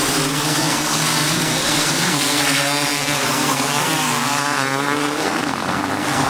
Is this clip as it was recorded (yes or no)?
no